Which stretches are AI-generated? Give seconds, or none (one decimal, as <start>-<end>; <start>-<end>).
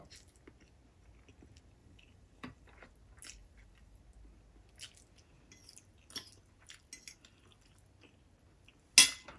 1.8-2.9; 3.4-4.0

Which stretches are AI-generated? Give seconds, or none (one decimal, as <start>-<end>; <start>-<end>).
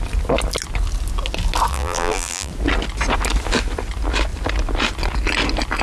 1.7-2.5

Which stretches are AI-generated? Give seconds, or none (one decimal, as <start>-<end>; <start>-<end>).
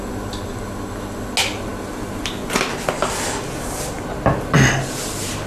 none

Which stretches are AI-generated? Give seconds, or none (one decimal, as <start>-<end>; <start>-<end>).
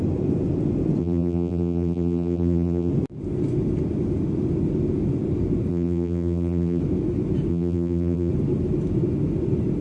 1.0-2.9; 5.7-6.8; 7.5-8.3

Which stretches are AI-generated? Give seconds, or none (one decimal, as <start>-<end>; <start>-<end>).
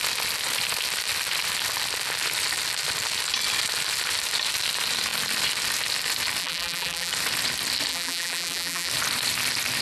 6.4-7.1; 7.9-8.9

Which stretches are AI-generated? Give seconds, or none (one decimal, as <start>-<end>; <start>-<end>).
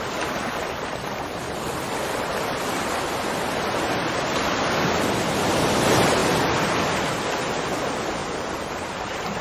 8.2-9.4